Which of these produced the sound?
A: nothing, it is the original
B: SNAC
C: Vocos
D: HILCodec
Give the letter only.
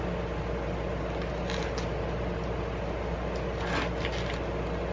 A